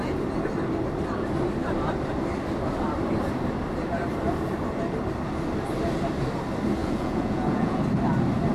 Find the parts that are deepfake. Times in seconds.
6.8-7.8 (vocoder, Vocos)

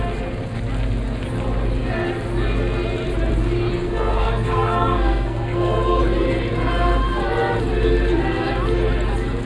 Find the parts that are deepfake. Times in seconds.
3.7-6.0 (codec, SNAC)

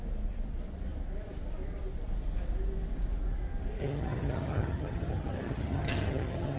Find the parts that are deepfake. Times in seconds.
3.8-6.6 (vocoder, HiFi-GAN)

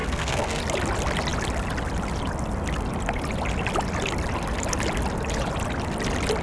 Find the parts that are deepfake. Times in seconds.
0.0-0.6 (codec, SNAC)

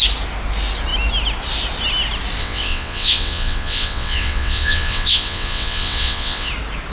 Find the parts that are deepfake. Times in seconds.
2.4-6.5 (vocoder, WaveNeXt)